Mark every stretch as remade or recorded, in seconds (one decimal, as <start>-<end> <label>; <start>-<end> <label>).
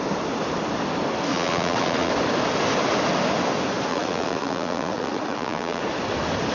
0.0-1.3 recorded; 1.3-2.1 remade; 2.1-3.9 recorded; 3.9-5.8 remade; 5.8-6.5 recorded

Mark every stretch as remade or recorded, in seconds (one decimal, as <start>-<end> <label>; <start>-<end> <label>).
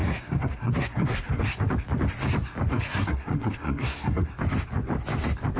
0.0-1.4 remade; 1.4-2.7 recorded; 2.7-4.3 remade; 4.3-5.6 recorded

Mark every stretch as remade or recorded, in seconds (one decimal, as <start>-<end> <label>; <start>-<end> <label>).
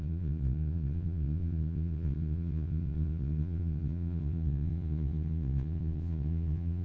0.0-6.8 remade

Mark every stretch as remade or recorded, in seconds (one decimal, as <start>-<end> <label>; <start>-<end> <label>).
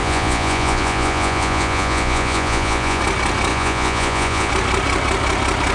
0.0-3.0 remade; 3.0-3.5 recorded; 3.5-4.5 remade; 4.5-5.7 recorded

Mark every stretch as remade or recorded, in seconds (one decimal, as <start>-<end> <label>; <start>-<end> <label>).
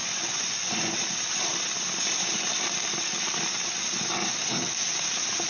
0.0-0.9 remade; 0.9-5.5 recorded